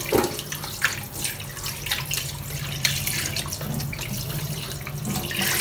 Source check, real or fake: real